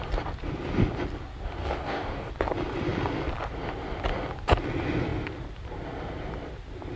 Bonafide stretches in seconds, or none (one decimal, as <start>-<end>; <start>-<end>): 0.0-1.6; 2.3-7.0